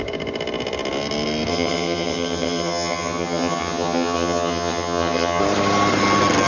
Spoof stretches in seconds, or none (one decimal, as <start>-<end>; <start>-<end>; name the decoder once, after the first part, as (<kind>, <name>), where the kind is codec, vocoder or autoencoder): 1.5-5.4 (vocoder, HiFi-GAN)